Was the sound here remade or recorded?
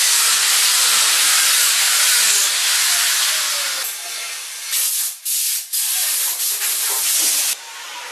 recorded